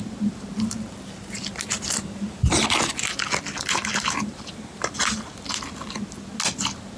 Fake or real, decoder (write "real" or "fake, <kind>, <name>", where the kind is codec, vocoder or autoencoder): real